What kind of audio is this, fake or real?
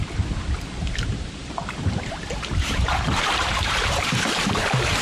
fake